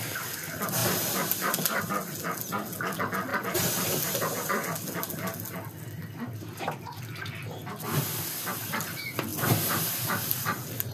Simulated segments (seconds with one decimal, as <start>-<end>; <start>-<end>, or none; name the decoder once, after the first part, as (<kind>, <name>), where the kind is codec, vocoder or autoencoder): none